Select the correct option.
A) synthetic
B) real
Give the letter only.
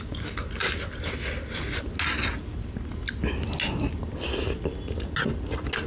B